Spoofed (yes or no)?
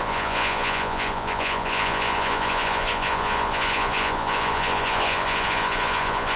yes